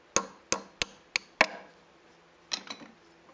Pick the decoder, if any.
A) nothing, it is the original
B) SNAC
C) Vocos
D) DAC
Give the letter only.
A